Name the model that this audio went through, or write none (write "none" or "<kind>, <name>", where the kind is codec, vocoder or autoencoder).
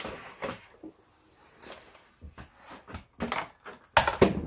none